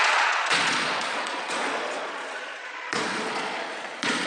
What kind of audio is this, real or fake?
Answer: fake